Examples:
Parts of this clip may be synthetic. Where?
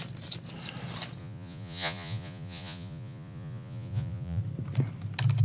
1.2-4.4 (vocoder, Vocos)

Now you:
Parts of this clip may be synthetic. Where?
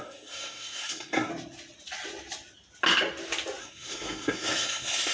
0.0-1.3 (codec, SNAC); 3.6-5.1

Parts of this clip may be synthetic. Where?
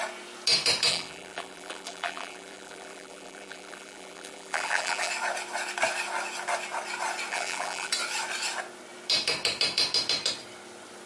0.9-5.1 (vocoder, BigVGAN v2); 7.3-7.9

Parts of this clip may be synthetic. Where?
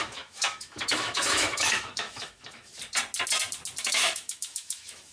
0.0-2.7 (autoencoder, DAC-VAE); 3.8-5.1